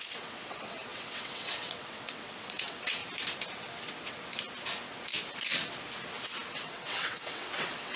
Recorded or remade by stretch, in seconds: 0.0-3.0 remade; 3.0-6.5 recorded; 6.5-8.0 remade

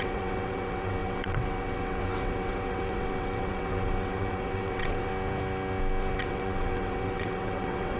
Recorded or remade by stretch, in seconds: 0.0-5.1 remade; 5.1-6.2 recorded; 6.2-8.0 remade

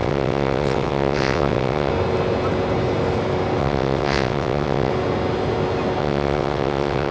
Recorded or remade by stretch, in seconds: 0.0-1.9 remade; 1.9-3.6 recorded; 3.6-4.9 remade; 4.9-6.0 recorded; 6.0-7.1 remade

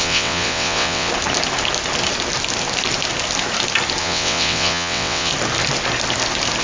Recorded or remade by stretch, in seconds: 0.0-1.1 remade; 1.1-4.0 recorded; 4.0-5.3 remade; 5.3-6.6 recorded

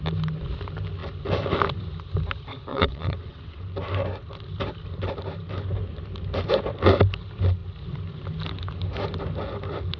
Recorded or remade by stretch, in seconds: 0.0-2.7 recorded; 2.7-3.6 remade; 3.6-10.0 recorded

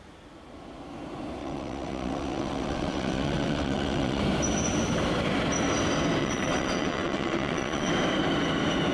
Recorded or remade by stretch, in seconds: 0.0-1.4 recorded; 1.4-4.2 remade; 4.2-6.2 recorded; 6.2-7.9 remade; 7.9-8.9 recorded

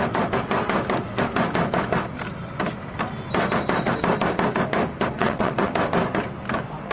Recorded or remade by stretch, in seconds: 0.0-5.2 recorded; 5.2-5.7 remade; 5.7-6.9 recorded